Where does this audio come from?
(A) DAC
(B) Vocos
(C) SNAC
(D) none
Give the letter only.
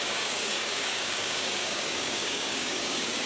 A